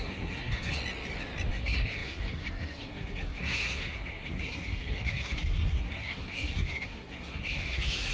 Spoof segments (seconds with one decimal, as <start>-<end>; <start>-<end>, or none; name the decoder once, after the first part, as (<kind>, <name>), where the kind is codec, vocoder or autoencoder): 0.0-0.8 (codec, SNAC); 1.5-8.1